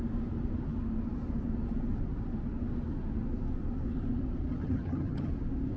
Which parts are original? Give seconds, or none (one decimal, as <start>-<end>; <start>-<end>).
0.0-4.5; 5.3-5.8